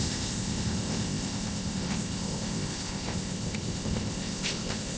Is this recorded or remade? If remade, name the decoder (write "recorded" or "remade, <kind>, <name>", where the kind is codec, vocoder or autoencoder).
remade, codec, ZipCodec